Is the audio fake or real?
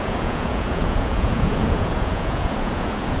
fake